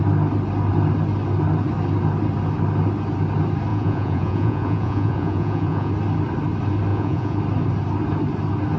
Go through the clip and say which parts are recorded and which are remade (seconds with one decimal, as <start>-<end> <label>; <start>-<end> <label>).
0.0-3.7 recorded; 3.7-5.9 remade; 5.9-6.9 recorded; 6.9-7.4 remade; 7.4-8.8 recorded